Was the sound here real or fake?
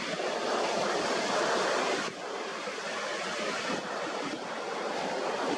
real